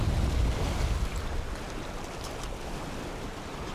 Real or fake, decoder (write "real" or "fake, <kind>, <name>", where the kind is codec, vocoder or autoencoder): real